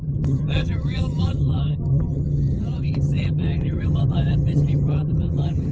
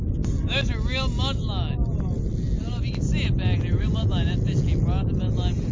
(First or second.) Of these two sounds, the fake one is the first